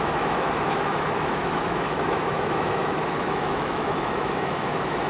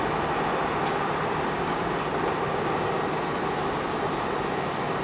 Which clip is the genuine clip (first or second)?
second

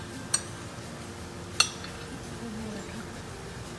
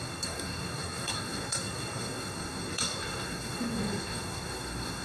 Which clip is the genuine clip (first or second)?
first